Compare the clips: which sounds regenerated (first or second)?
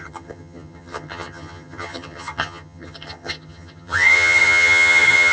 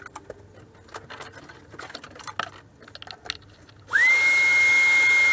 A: first